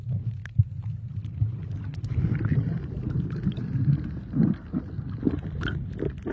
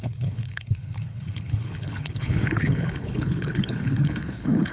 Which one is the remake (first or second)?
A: second